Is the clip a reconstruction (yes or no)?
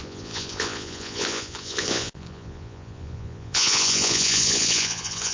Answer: yes